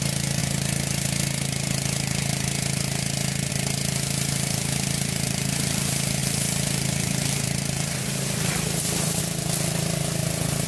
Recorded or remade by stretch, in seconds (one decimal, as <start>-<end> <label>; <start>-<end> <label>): 0.0-6.2 recorded; 6.2-9.2 remade; 9.2-10.7 recorded